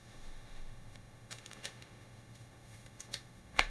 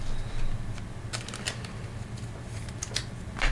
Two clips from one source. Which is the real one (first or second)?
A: second